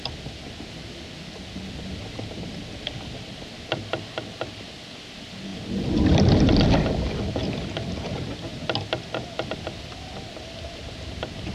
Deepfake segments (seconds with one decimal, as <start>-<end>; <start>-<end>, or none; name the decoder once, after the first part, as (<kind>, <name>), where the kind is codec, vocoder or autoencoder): none